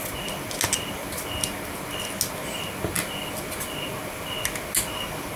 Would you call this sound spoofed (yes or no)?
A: no